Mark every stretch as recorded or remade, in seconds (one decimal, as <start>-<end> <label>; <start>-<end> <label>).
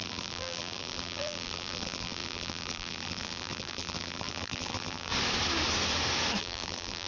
0.0-5.1 remade; 5.1-6.4 recorded; 6.4-7.1 remade